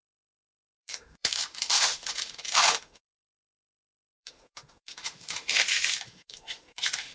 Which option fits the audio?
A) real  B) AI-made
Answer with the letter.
B